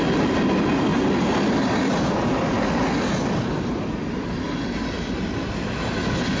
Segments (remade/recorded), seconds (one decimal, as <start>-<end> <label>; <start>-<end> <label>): 0.0-6.4 recorded